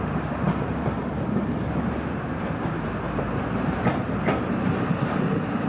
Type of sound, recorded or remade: recorded